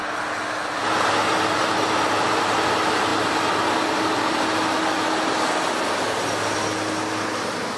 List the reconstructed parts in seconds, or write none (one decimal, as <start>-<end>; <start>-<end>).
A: none

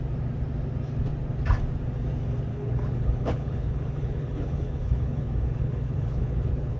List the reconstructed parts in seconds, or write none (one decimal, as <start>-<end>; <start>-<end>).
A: 2.5-6.8

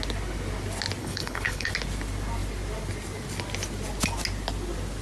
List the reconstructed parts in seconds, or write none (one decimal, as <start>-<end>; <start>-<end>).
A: 1.0-1.7

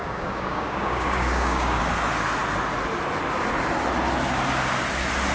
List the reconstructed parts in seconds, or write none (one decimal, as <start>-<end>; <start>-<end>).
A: 0.0-1.8

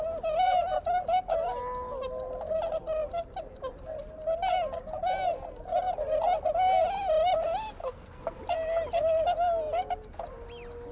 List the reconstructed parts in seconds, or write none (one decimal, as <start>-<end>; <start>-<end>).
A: 7.8-8.4